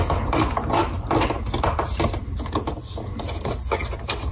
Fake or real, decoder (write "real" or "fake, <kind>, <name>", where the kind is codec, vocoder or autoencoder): real